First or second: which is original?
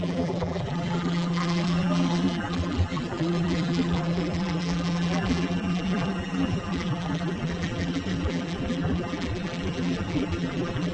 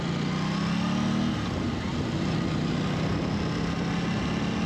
second